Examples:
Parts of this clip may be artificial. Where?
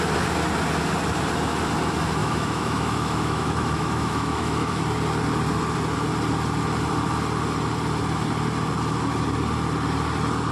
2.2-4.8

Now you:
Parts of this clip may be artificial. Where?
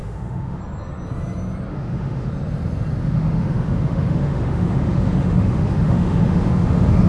0.0-0.6; 1.7-2.3; 3.0-7.1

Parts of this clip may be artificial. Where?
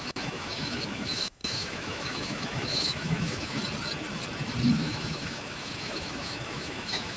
0.0-3.6; 4.7-7.2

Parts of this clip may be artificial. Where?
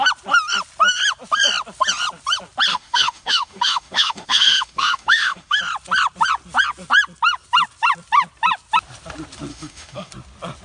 2.7-5.6; 9.5-10.1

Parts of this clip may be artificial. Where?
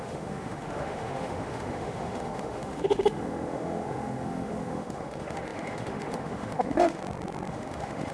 0.0-7.0; 7.5-8.1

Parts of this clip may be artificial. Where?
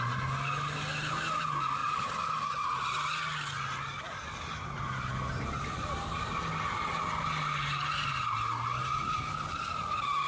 none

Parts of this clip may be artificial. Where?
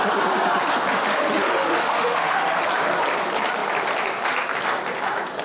1.1-2.6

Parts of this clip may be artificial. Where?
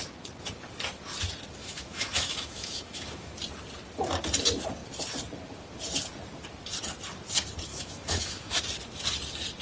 1.6-3.3; 7.7-8.6